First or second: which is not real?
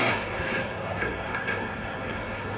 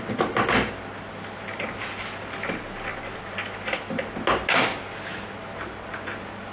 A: first